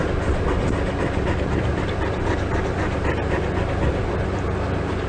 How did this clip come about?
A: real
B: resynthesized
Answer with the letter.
A